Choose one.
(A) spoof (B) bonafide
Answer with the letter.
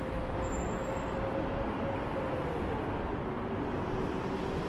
B